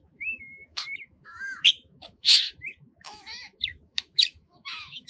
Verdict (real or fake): fake